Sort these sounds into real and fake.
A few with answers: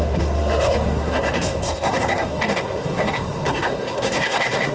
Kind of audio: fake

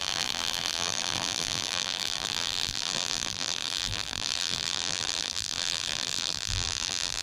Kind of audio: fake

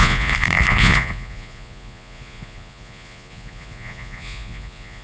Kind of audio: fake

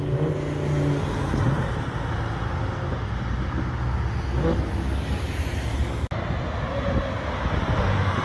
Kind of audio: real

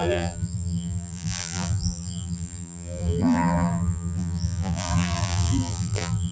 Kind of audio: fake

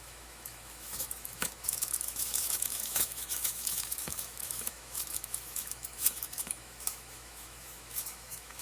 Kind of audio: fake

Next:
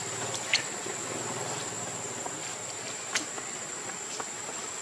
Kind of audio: real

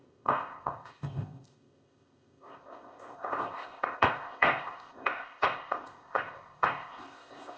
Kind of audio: fake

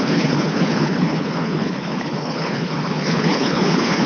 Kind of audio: fake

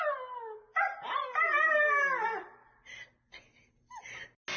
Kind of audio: real